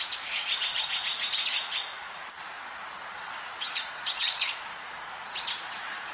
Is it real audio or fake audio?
fake